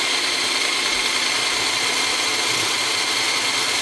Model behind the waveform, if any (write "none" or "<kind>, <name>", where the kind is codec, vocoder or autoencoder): vocoder, BigVGAN v2